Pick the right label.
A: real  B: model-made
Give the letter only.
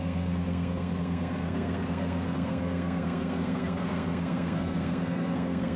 B